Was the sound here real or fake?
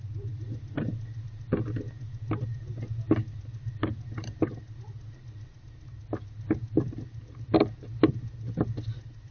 real